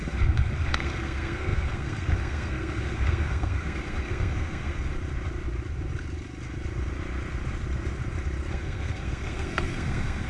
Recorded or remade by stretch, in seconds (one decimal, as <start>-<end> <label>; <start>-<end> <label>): 0.0-4.9 remade; 4.9-8.5 recorded; 8.5-10.3 remade